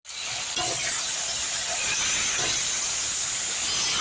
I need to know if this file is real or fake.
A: real